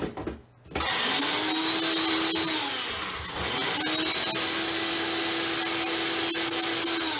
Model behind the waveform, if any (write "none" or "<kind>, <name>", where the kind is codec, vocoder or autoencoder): none